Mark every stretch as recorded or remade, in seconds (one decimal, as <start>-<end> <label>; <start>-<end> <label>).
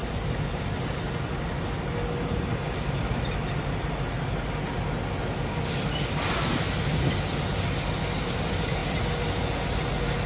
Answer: 0.0-10.3 recorded